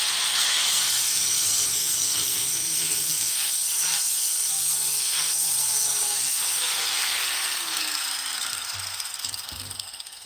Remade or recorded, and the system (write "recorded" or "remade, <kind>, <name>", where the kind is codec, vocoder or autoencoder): remade, codec, SNAC